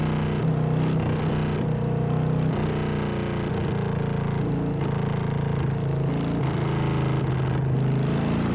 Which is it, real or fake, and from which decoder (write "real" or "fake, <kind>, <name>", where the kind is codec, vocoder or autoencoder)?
real